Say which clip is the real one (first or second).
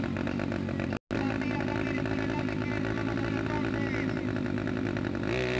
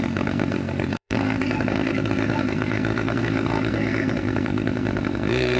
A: first